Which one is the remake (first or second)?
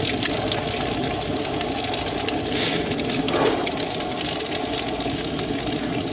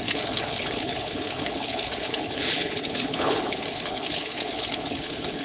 second